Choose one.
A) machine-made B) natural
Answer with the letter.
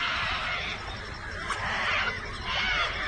B